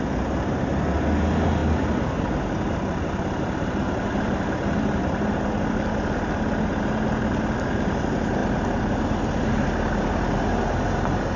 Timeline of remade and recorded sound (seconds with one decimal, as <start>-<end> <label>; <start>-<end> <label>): 0.0-11.4 recorded